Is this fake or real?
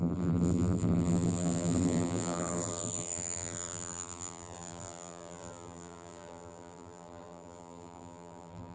fake